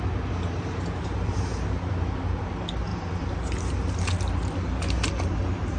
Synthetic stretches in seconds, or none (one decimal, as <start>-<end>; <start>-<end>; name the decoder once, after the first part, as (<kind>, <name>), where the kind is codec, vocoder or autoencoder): none